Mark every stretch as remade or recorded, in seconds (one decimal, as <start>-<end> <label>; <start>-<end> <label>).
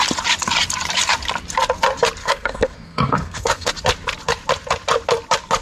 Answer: 0.0-2.2 recorded; 2.2-3.7 remade; 3.7-5.6 recorded